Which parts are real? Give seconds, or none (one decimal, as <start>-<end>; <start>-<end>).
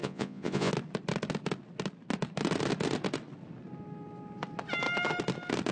0.7-5.7